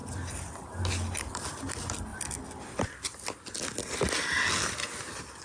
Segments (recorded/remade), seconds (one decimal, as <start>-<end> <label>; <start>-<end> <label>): 0.0-5.4 recorded